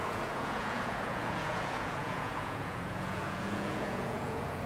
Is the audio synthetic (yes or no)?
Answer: yes